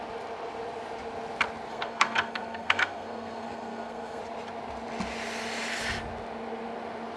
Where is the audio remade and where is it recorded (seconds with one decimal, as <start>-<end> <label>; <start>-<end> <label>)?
0.0-1.7 recorded; 1.7-4.2 remade; 4.2-7.2 recorded